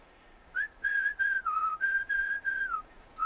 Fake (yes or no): yes